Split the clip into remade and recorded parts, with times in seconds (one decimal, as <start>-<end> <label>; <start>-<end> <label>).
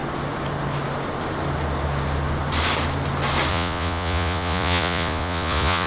0.0-3.5 recorded; 3.5-5.9 remade